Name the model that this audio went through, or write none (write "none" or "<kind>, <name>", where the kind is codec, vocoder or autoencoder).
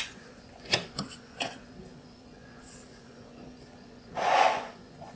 vocoder, Vocos